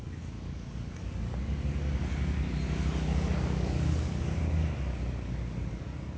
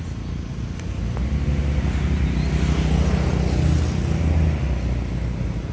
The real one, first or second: second